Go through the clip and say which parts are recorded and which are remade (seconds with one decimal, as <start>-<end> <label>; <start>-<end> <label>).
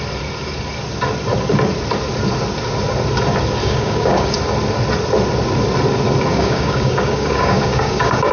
0.0-3.6 recorded; 3.6-4.4 remade; 4.4-6.3 recorded; 6.3-8.3 remade